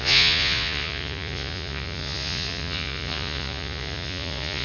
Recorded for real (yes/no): no